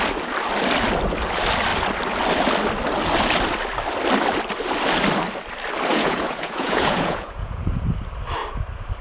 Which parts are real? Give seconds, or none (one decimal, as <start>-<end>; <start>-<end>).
0.0-5.9; 7.9-9.0